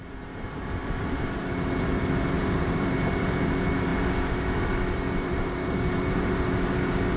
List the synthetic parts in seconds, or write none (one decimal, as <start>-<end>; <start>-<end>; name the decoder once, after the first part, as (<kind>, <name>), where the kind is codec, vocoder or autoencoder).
0.0-7.2 (vocoder, BigVGAN v2)